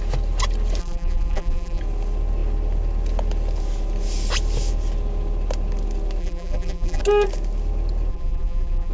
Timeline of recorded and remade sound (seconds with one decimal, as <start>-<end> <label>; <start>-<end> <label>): 0.0-0.8 recorded; 0.8-1.8 remade; 1.8-6.2 recorded; 6.2-7.0 remade; 7.0-8.1 recorded; 8.1-8.9 remade